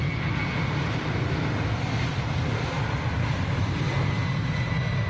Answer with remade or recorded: recorded